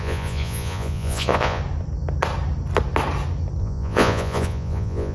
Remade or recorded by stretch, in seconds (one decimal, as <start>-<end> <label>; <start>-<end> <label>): 0.0-1.6 remade; 1.6-3.6 recorded; 3.6-5.1 remade